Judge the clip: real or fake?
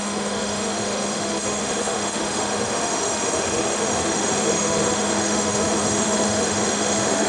fake